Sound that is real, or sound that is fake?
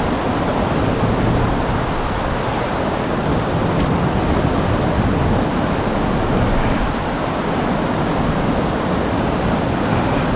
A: real